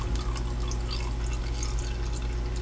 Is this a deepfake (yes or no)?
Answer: no